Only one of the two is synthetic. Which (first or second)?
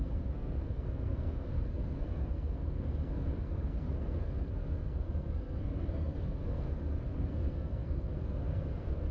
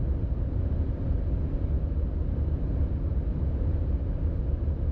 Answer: first